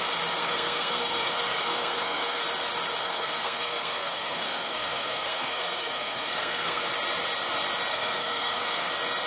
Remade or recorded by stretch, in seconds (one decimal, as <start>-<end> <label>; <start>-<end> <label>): 0.0-0.4 recorded; 0.4-2.4 remade; 2.4-3.0 recorded; 3.0-6.8 remade; 6.8-7.9 recorded; 7.9-8.9 remade; 8.9-9.3 recorded